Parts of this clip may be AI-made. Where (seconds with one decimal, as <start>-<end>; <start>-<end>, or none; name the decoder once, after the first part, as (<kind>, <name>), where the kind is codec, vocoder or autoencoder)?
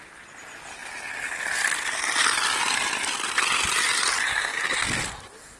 0.0-0.8 (vocoder, BigVGAN v2); 3.7-4.5